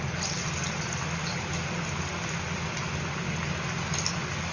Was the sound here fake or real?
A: real